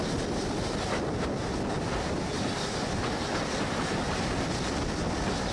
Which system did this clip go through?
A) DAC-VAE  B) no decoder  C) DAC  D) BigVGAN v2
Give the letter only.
B